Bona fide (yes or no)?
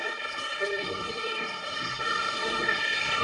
no